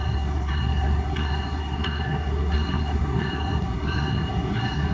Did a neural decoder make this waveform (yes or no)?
yes